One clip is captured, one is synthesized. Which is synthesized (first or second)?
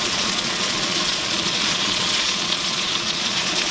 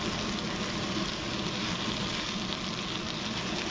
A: first